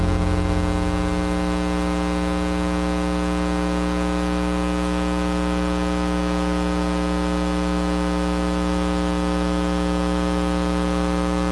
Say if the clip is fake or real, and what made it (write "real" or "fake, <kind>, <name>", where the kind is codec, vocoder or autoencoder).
real